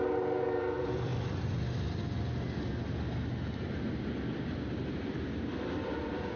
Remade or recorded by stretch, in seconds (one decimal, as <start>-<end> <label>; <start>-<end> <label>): 0.0-1.1 remade; 1.1-4.9 recorded; 4.9-6.4 remade